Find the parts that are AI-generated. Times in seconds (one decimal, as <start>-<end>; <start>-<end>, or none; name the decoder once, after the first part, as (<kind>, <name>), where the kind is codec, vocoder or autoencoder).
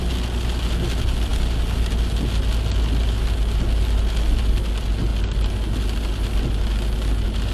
none